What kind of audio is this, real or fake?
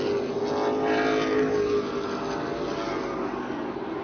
real